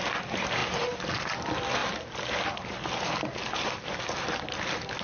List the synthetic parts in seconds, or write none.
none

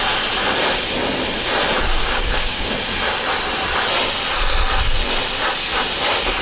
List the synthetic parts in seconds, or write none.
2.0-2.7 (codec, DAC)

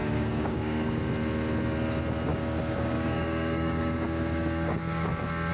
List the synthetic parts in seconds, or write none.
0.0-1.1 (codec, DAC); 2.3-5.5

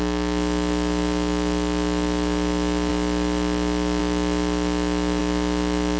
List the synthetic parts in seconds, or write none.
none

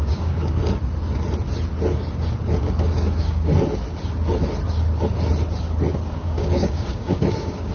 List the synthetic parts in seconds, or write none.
0.0-0.6 (codec, DAC); 2.6-3.5; 6.1-7.7